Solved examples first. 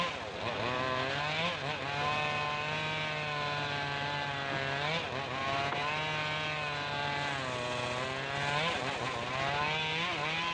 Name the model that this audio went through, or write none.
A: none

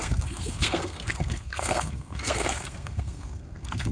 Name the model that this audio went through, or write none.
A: codec, SNAC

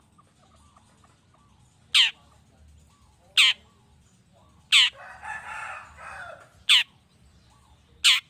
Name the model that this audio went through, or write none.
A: none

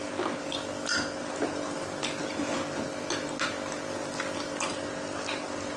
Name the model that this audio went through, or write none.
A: none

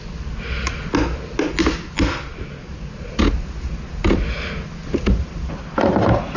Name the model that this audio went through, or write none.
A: none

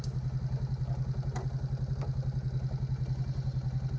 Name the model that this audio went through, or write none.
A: none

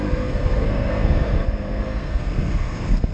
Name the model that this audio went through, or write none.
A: codec, SNAC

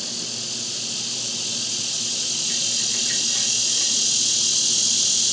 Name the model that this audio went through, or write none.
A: none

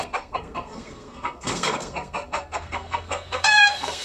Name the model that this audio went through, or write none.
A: codec, SNAC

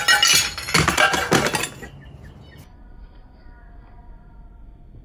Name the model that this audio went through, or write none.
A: none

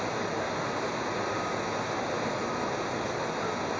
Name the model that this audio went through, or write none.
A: none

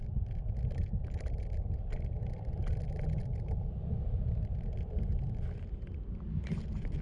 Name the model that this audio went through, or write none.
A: none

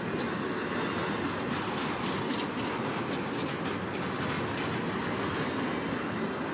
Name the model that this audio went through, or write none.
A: none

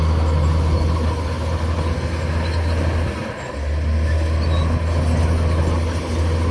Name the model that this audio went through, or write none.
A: none